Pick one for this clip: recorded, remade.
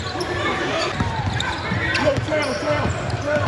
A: remade